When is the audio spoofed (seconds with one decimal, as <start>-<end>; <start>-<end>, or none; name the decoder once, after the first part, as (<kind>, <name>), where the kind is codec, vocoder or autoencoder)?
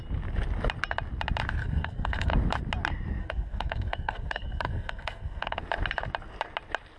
1.6-2.3 (codec, SNAC); 3.2-5.6